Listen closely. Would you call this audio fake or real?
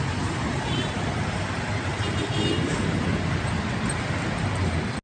real